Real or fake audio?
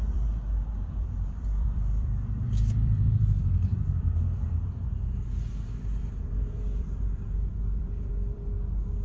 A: fake